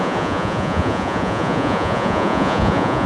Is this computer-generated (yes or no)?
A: yes